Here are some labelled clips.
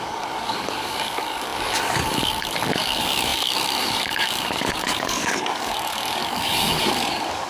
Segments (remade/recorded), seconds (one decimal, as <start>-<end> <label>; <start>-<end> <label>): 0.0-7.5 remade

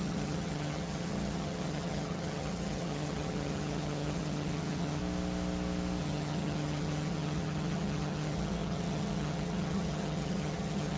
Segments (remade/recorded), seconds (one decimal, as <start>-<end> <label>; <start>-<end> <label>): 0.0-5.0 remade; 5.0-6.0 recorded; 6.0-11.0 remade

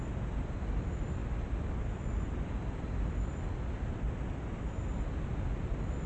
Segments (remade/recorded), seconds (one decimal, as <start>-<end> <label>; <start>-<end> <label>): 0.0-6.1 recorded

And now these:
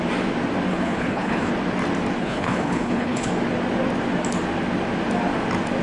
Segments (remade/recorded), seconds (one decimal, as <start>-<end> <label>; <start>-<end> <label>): 0.0-0.7 recorded; 0.7-1.5 remade; 1.5-2.2 recorded; 2.2-3.3 remade; 3.3-5.8 recorded

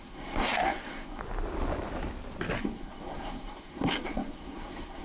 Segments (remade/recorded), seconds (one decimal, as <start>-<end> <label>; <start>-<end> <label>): 0.0-1.2 remade; 1.2-2.6 recorded; 2.6-5.0 remade